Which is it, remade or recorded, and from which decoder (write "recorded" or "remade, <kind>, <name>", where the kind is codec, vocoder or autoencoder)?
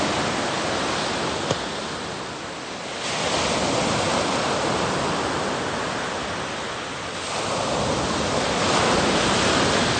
recorded